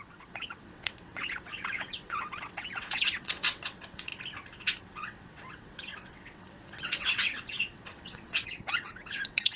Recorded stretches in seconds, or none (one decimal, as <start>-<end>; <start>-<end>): 4.1-4.8